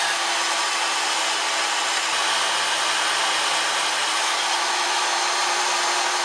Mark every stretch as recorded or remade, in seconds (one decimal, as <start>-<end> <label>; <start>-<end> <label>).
0.0-4.0 recorded; 4.0-6.2 remade